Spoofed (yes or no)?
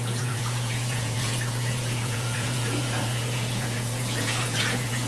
yes